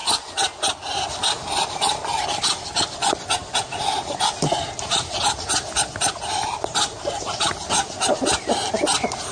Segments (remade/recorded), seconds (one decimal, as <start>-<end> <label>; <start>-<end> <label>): 0.0-9.3 recorded